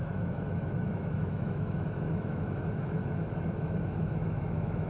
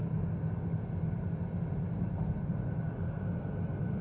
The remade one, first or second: first